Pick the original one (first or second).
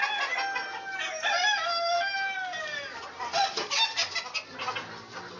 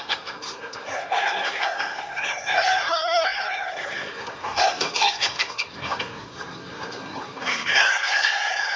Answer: first